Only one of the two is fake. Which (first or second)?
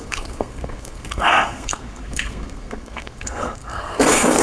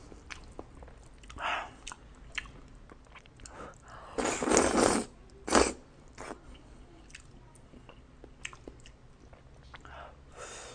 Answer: first